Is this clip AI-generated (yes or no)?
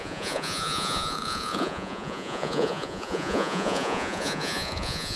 yes